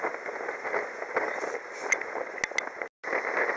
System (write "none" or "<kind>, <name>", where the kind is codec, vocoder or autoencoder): none